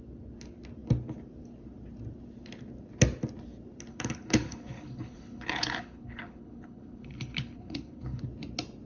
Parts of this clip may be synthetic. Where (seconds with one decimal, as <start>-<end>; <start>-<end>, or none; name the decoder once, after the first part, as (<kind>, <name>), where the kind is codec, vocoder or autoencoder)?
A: 3.9-8.2 (codec, HILCodec)